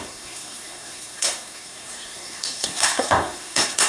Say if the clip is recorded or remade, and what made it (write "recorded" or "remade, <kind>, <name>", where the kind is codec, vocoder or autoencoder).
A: remade, codec, SNAC